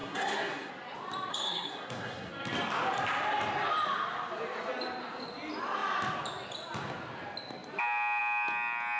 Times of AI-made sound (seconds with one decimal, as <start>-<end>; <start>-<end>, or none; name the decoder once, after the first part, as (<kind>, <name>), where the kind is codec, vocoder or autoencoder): 0.0-0.7 (codec, SNAC); 1.3-2.3